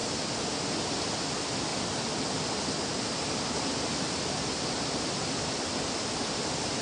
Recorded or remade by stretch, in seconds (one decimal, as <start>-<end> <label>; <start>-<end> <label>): 0.0-1.1 remade; 1.1-1.7 recorded; 1.7-5.1 remade; 5.1-6.8 recorded